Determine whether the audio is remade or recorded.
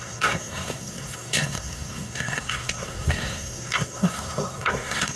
remade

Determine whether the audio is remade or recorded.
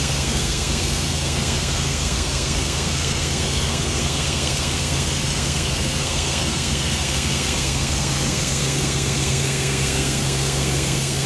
remade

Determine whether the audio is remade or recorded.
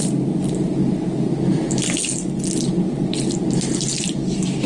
recorded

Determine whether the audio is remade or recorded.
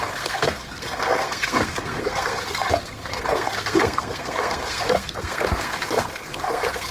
remade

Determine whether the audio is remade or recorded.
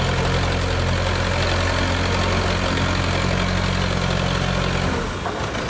recorded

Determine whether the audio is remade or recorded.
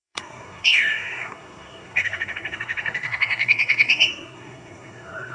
remade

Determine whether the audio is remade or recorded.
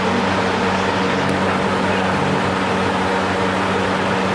recorded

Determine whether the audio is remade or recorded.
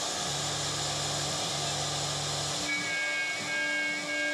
recorded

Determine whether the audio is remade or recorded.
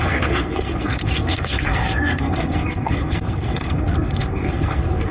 remade